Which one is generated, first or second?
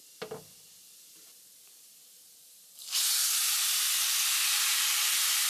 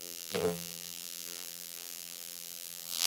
second